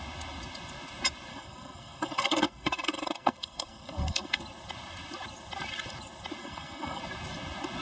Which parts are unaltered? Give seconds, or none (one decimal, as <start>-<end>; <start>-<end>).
0.0-1.3; 4.4-6.4; 7.0-7.8